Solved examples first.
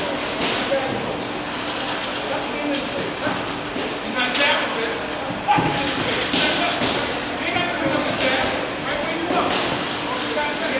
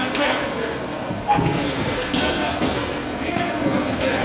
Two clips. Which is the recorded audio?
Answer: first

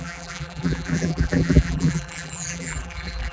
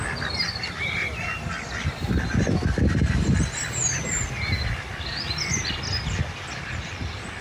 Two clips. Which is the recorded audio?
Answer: second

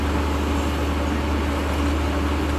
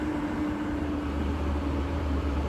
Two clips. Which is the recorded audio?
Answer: first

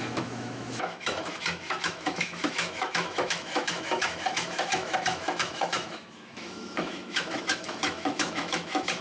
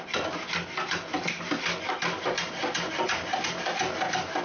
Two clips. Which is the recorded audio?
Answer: second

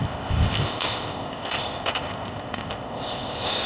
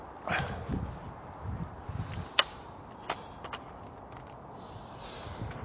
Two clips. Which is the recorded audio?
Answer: second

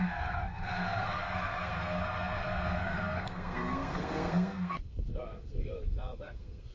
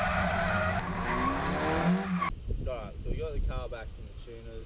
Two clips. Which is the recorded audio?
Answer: second